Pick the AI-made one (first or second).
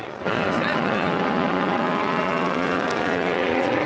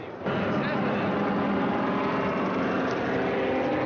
first